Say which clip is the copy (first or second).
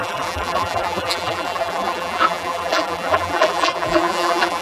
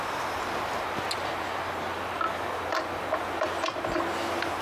first